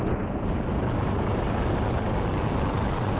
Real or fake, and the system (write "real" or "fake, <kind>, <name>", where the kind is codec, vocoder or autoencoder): real